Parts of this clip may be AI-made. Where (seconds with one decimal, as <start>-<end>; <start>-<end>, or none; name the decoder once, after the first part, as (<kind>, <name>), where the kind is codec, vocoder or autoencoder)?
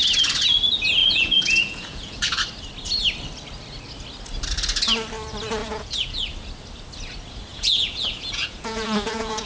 1.0-2.4 (vocoder, Vocos); 5.6-6.3; 7.5-9.5